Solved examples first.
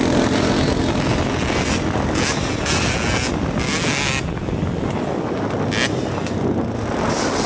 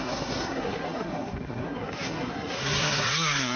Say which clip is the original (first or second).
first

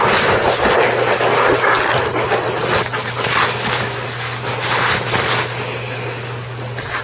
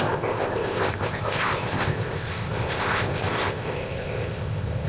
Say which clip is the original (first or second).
first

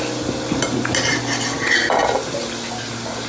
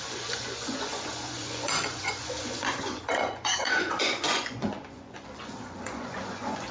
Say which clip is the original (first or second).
first